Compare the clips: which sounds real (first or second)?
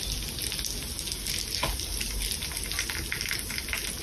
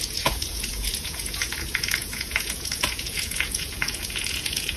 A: first